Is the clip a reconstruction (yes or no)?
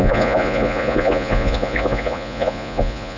yes